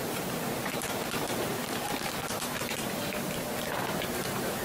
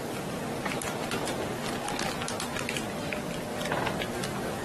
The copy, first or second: first